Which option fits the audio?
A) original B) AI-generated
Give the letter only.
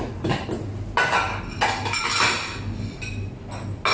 A